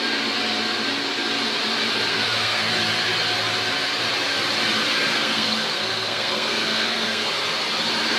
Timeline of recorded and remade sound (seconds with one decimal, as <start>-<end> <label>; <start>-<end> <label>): 0.0-2.1 recorded; 2.1-2.7 remade; 2.7-5.1 recorded; 5.1-7.3 remade; 7.3-8.2 recorded